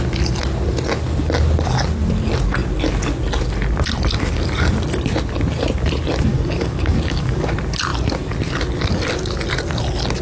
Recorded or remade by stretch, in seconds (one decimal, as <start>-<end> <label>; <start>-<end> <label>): 0.0-6.3 recorded; 6.3-7.5 remade; 7.5-10.2 recorded